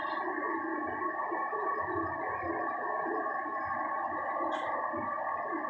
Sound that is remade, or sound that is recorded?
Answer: recorded